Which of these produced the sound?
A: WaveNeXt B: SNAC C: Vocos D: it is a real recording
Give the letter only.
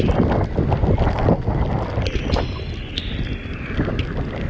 D